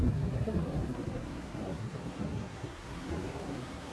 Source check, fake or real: fake